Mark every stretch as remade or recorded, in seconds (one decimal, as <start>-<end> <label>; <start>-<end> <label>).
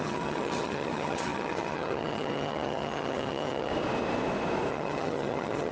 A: 0.0-3.7 remade; 3.7-4.7 recorded; 4.7-5.7 remade